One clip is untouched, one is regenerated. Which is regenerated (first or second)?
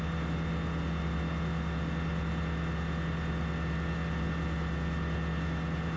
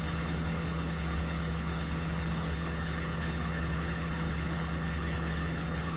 second